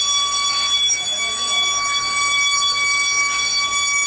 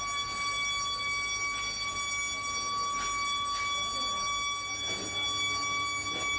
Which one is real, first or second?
second